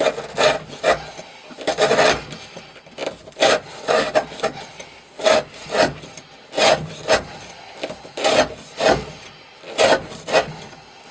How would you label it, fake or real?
real